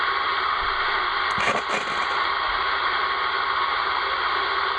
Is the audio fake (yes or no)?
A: no